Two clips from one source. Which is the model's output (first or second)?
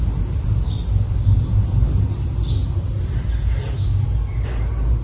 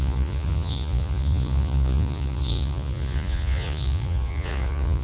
second